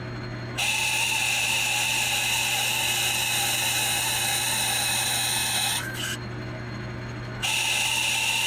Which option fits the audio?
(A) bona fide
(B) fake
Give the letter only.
A